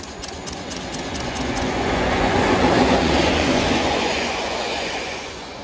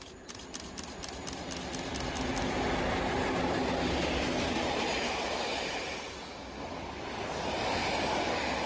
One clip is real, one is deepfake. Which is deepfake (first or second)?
first